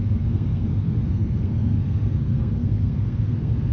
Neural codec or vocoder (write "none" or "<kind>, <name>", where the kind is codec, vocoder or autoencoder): codec, SNAC